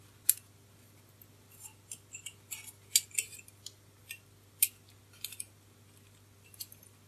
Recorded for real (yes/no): yes